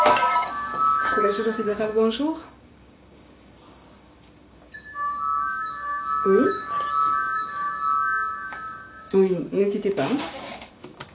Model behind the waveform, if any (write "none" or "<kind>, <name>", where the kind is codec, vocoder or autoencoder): codec, DAC